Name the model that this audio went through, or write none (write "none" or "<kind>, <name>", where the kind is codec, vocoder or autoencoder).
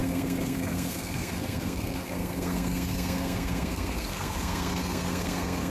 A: codec, SNAC